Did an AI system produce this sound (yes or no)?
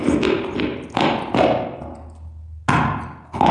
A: no